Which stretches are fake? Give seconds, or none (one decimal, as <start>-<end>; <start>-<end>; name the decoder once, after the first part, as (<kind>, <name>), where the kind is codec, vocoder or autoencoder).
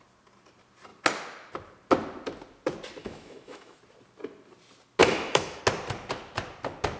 3.0-3.8 (autoencoder, DAC-VAE); 5.0-5.6